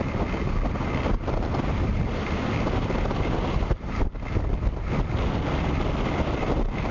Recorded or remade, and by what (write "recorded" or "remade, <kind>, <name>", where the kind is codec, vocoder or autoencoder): recorded